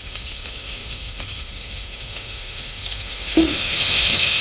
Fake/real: fake